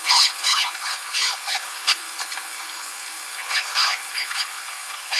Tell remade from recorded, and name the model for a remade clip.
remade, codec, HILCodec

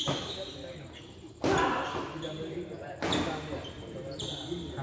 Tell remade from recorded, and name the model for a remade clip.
recorded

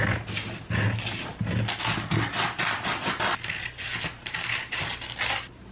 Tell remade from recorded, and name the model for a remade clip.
recorded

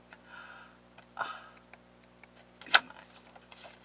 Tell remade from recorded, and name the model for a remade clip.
recorded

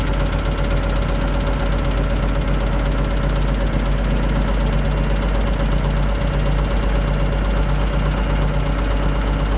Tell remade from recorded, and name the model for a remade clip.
recorded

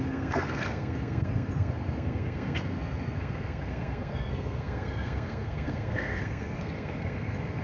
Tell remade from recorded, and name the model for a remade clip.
remade, codec, SNAC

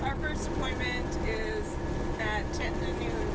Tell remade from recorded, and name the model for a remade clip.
recorded